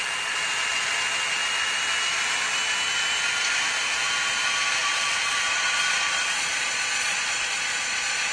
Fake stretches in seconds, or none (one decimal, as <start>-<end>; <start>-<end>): 4.8-8.3